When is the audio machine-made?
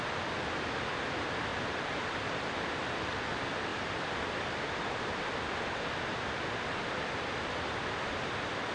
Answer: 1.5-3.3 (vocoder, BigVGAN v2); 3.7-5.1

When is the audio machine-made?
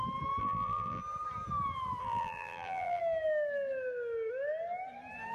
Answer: 0.4-1.0 (vocoder, BigVGAN v2); 2.0-3.0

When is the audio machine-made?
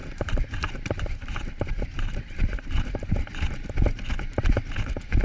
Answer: 0.0-3.1 (vocoder, BigVGAN v2)